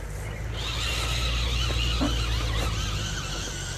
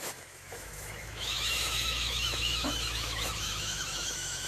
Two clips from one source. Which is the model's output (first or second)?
second